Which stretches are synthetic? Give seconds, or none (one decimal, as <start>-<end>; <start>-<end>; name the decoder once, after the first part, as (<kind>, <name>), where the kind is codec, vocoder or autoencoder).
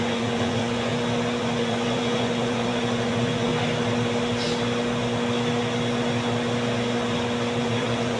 0.0-0.9 (vocoder, Vocos); 1.4-3.5; 7.6-8.2